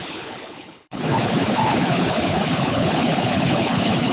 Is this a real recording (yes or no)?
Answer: no